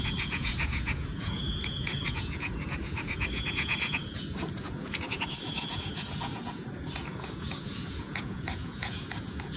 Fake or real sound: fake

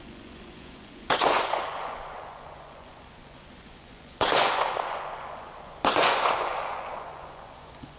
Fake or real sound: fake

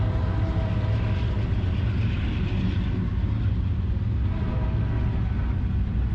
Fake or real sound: real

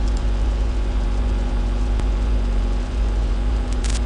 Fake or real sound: fake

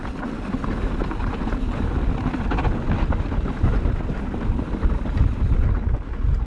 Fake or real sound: real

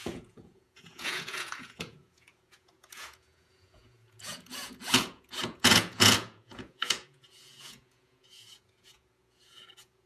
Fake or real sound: fake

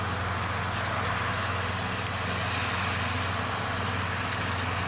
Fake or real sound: real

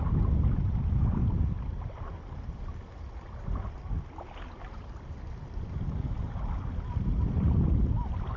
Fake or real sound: real